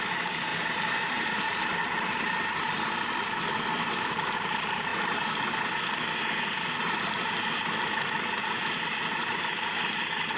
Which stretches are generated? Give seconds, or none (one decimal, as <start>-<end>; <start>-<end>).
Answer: 0.0-4.9; 9.2-10.4